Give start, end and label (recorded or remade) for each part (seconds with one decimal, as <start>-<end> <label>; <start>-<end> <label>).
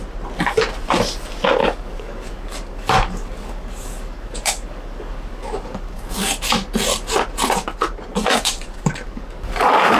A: 0.0-1.6 recorded; 1.6-6.5 remade; 6.5-8.1 recorded; 8.1-10.0 remade